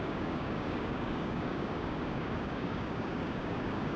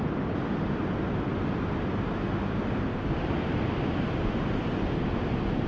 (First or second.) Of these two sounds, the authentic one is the second